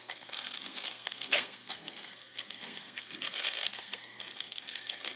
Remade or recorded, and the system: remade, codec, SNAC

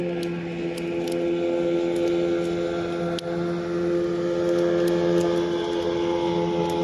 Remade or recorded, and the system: recorded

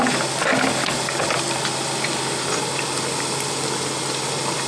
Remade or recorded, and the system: recorded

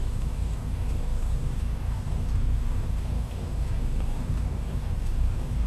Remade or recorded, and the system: remade, codec, DAC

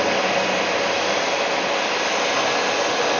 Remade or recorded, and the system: recorded